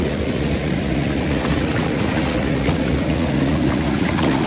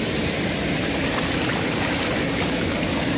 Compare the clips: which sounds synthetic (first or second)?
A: first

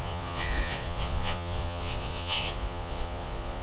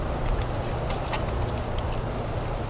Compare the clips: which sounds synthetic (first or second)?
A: first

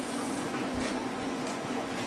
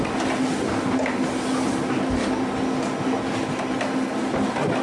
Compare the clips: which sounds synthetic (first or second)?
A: first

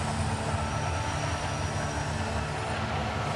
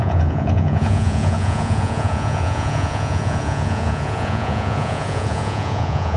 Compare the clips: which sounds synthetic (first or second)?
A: second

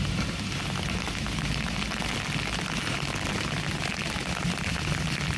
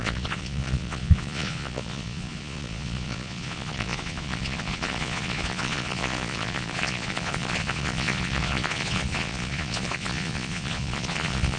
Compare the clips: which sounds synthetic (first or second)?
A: second